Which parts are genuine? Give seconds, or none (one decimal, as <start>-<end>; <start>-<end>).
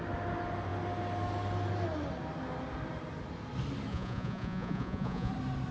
0.0-3.9; 5.3-5.7